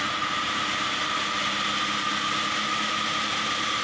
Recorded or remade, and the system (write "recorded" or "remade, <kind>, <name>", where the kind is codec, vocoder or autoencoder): recorded